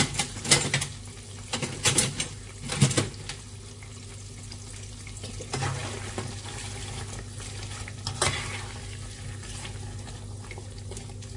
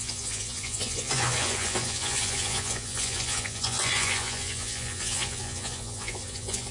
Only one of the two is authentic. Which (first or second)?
first